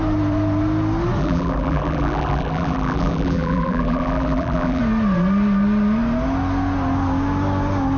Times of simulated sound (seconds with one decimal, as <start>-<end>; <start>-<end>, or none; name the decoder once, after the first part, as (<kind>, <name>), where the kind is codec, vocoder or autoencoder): 1.2-4.8 (vocoder, BigVGAN v2)